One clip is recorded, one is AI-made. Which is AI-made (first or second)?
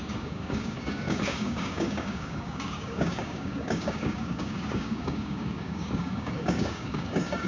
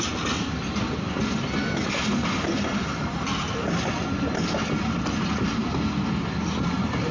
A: first